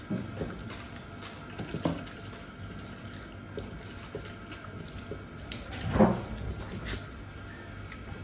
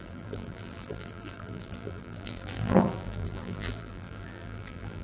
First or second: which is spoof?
second